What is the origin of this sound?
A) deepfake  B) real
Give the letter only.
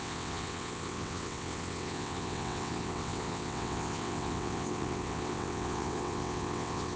A